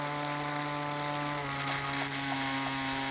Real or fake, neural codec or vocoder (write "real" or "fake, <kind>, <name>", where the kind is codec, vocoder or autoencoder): real